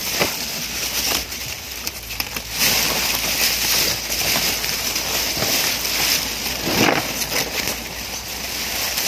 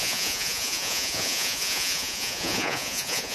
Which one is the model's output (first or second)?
second